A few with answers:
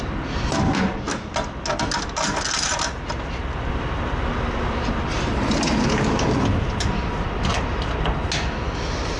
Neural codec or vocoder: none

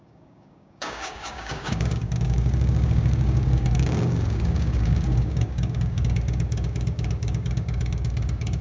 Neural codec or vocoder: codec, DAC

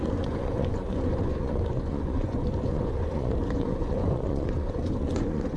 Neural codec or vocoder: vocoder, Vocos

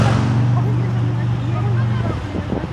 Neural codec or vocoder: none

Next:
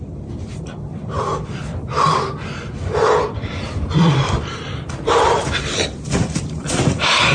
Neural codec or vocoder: vocoder, BigVGAN v2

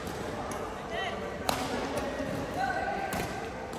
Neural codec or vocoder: none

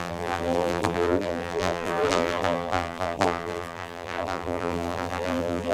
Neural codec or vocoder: vocoder, BigVGAN v2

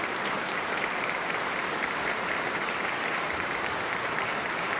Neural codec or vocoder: vocoder, BigVGAN v2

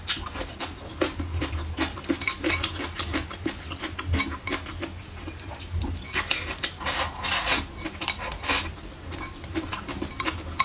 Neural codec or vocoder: none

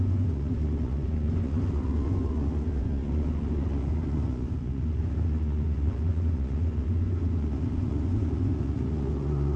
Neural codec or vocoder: vocoder, Vocos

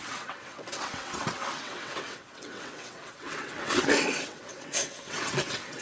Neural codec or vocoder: vocoder, WaveNeXt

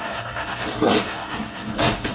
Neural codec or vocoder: codec, SNAC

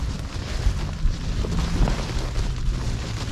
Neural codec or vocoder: none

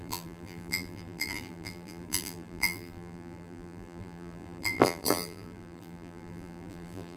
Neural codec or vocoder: vocoder, BigVGAN v2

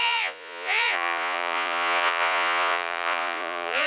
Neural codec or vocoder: vocoder, Vocos